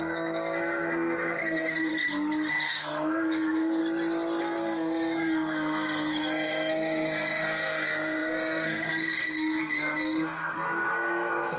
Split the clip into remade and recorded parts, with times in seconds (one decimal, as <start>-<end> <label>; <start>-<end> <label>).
0.0-1.9 remade; 1.9-2.5 recorded; 2.5-3.8 remade; 3.8-4.4 recorded; 4.4-11.6 remade